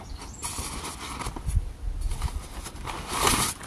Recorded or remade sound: recorded